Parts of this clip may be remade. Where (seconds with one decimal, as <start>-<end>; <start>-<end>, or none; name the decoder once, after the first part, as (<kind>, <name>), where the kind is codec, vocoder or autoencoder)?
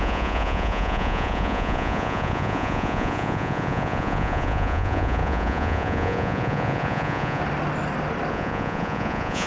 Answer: 0.0-7.4 (vocoder, Vocos); 8.3-9.5